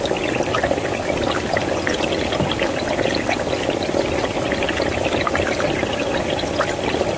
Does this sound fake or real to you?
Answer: real